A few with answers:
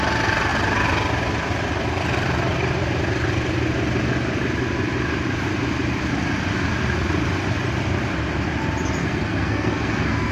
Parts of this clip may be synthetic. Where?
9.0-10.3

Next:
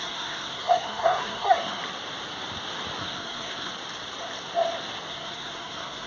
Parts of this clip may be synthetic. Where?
0.0-1.8; 3.0-3.7; 5.1-6.1

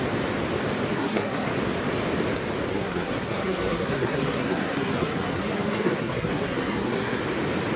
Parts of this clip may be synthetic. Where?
0.9-1.5; 2.7-7.2

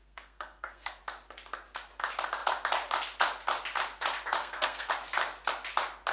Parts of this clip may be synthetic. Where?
0.0-1.0; 4.4-4.9

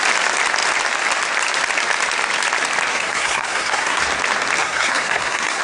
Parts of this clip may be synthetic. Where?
2.9-4.0; 4.6-5.6

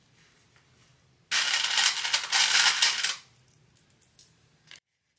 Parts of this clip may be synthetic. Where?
none

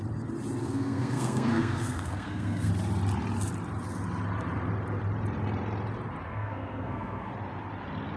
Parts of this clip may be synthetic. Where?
0.6-2.7; 6.3-7.3

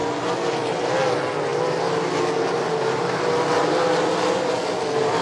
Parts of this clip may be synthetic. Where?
none